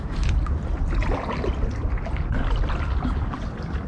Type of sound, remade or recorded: recorded